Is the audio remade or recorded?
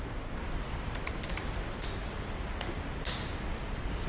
recorded